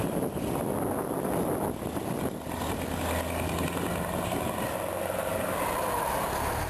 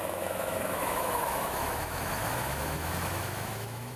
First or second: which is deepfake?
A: second